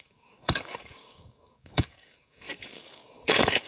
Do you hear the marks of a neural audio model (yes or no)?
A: yes